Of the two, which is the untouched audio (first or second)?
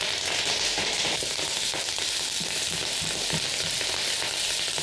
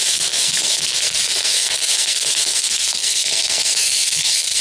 first